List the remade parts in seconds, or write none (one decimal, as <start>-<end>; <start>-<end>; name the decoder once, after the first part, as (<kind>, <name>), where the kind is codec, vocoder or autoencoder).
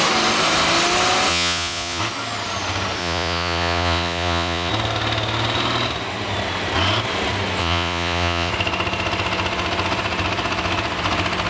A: 1.3-2.0 (vocoder, Vocos); 3.0-4.7; 7.6-8.5